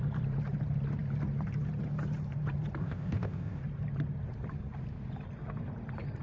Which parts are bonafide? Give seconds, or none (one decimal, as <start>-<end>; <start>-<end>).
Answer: 0.0-2.8; 3.6-6.2